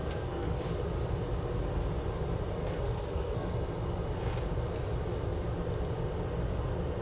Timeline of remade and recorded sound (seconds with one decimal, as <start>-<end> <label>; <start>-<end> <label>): 0.0-0.6 remade; 0.6-2.6 recorded; 2.6-3.5 remade; 3.5-7.0 recorded

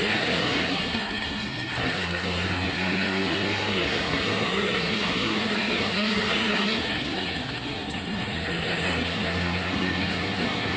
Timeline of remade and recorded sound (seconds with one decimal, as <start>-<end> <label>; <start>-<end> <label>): 0.0-10.8 remade

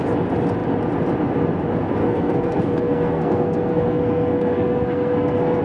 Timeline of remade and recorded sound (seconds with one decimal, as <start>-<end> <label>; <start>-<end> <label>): 0.0-2.0 recorded; 2.0-5.6 remade

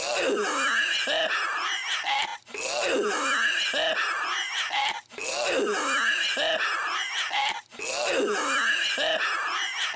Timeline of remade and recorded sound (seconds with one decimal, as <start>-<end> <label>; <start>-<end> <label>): 0.0-10.0 recorded

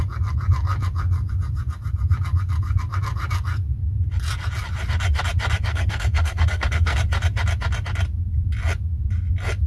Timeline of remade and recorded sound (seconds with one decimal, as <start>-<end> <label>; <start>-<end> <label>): 0.0-5.7 recorded; 5.7-7.0 remade; 7.0-9.7 recorded

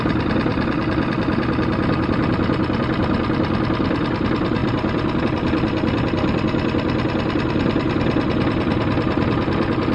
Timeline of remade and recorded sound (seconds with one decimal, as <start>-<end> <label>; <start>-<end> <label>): 0.0-9.9 recorded

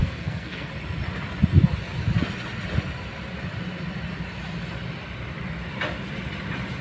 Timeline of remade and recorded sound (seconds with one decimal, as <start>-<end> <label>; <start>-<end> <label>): 0.0-0.7 remade; 0.7-6.8 recorded